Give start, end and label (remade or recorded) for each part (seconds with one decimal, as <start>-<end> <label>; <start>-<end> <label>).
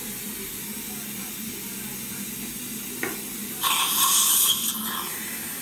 0.0-5.6 recorded